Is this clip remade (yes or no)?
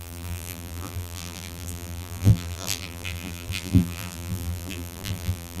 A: yes